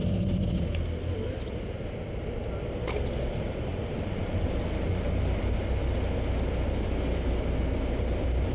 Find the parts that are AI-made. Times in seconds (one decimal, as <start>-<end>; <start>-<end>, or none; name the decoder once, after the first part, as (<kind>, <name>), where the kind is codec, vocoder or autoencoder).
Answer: 3.7-5.5 (vocoder, BigVGAN v2)